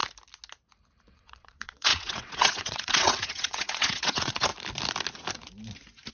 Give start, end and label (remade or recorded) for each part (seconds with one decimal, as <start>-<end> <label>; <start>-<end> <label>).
0.0-1.1 recorded; 1.1-4.5 remade; 4.5-6.1 recorded